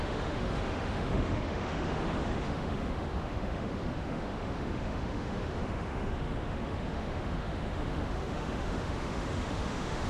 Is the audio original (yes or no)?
no